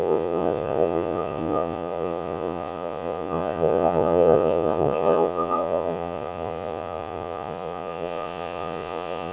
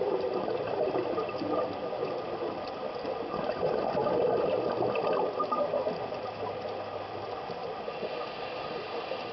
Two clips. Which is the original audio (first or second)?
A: second